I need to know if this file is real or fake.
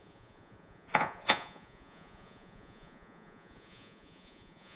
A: fake